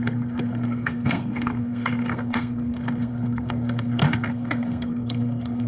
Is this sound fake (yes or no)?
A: yes